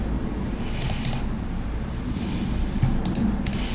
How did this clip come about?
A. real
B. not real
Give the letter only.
A